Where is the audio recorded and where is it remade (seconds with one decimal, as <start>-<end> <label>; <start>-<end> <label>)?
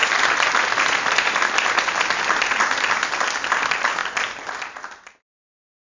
0.0-6.0 recorded